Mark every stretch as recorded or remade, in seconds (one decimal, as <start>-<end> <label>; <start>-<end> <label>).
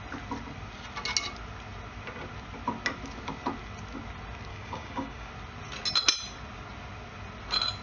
0.0-4.5 recorded; 4.5-5.3 remade; 5.3-7.8 recorded